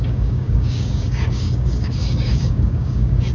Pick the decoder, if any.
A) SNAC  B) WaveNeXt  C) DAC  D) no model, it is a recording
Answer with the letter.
C